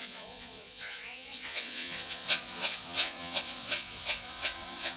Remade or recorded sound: remade